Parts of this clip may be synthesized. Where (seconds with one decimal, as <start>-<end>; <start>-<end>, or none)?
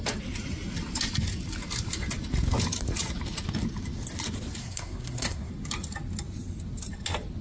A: 4.6-5.5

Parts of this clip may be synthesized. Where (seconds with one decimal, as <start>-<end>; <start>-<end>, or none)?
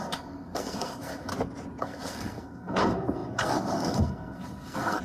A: 0.0-1.3; 1.8-5.0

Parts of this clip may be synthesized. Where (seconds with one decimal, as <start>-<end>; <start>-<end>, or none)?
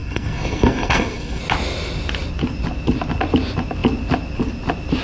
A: 0.0-1.4